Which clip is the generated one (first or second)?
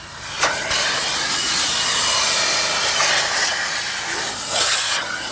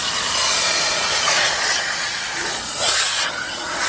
second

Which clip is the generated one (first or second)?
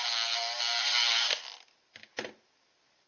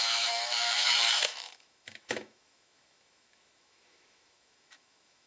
second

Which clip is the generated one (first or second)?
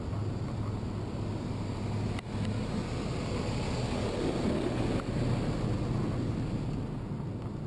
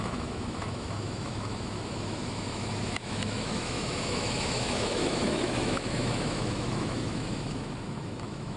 second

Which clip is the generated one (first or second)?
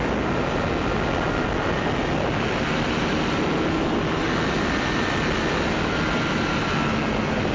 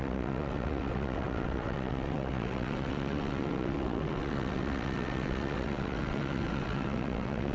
second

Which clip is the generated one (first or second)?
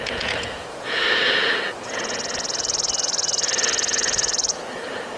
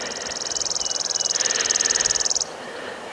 first